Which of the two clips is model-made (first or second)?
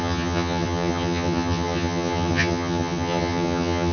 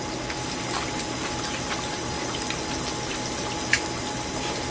first